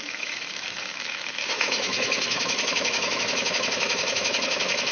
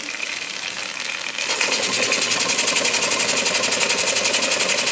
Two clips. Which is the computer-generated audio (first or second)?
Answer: first